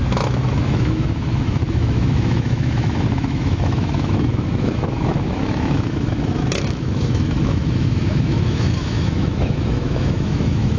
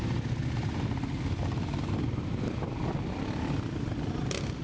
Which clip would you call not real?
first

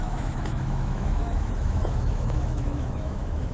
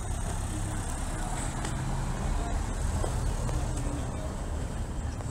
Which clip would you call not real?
first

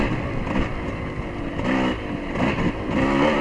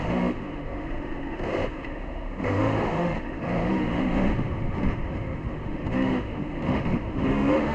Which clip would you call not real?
second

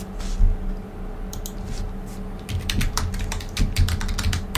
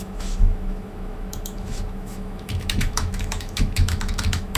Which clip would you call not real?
second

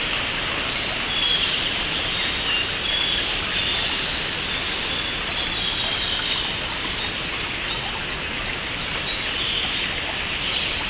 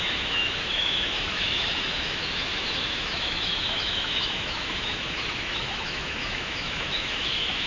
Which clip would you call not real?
second